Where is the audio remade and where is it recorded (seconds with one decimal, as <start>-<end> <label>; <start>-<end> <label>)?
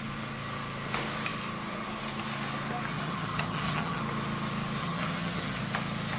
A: 0.0-2.9 recorded; 2.9-4.0 remade; 4.0-4.8 recorded; 4.8-5.6 remade; 5.6-6.2 recorded